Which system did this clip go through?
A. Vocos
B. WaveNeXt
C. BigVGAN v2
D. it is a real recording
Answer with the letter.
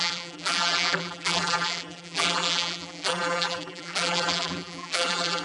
C